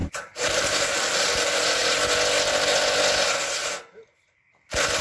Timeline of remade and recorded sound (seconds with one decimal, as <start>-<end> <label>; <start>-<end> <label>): 0.0-0.6 remade; 0.6-5.0 recorded